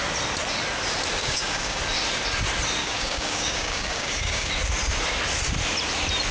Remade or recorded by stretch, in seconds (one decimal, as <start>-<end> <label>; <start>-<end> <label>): 0.0-1.2 recorded; 1.2-1.8 remade; 1.8-2.8 recorded; 2.8-4.5 remade; 4.5-6.3 recorded